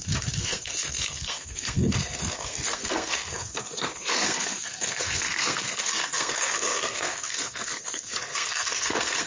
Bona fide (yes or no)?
no